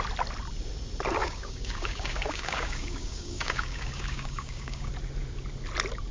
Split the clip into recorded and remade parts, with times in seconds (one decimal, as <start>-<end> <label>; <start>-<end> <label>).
0.0-1.2 recorded; 1.2-4.9 remade; 4.9-6.1 recorded